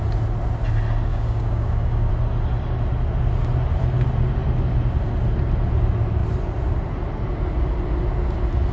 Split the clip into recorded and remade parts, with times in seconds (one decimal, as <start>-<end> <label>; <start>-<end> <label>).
0.0-1.1 recorded; 1.1-2.1 remade; 2.1-8.7 recorded